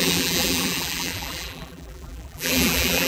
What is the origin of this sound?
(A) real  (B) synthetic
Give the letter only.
B